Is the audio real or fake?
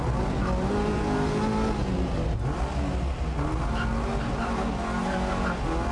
real